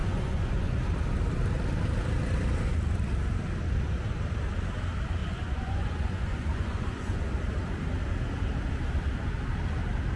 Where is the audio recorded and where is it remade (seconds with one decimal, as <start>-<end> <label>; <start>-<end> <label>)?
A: 0.0-0.8 remade; 0.8-5.2 recorded; 5.2-7.2 remade; 7.2-10.2 recorded